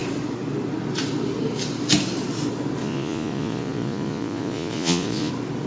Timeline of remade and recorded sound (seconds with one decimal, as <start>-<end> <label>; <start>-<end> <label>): 0.0-2.8 recorded; 2.8-5.3 remade; 5.3-5.7 recorded

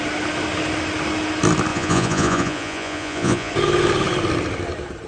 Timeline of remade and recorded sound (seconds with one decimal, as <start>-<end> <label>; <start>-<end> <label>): 0.0-1.7 recorded; 1.7-3.5 remade; 3.5-5.1 recorded

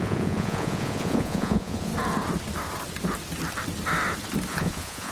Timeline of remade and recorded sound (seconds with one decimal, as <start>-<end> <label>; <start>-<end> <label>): 0.0-1.9 remade; 1.9-4.5 recorded; 4.5-5.1 remade

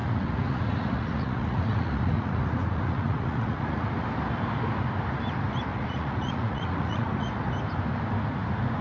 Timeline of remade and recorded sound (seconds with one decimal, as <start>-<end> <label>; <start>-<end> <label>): 0.0-3.9 remade; 3.9-5.7 recorded; 5.7-7.3 remade; 7.3-8.8 recorded

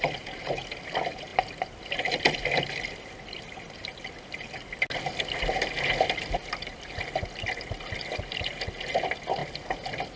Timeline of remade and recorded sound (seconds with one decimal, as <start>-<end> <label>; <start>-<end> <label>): 0.0-10.2 recorded